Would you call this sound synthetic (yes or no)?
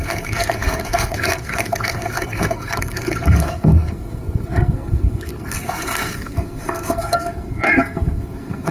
yes